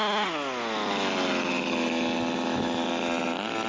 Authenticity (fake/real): real